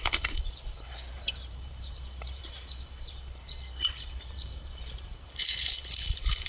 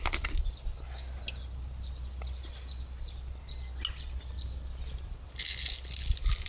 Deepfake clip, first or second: first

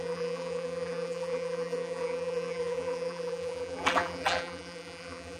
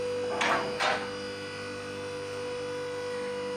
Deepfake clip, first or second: first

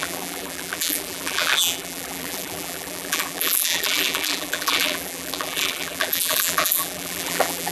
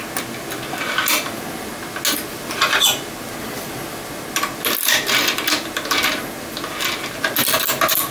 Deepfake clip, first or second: first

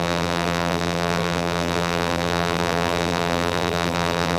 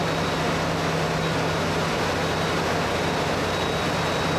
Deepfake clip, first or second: first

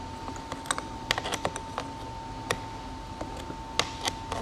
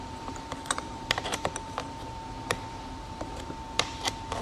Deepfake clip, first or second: second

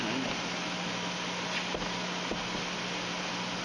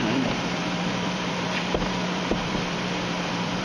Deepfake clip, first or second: second